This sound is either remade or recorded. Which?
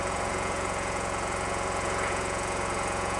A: remade